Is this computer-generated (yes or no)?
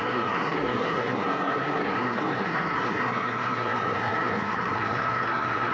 yes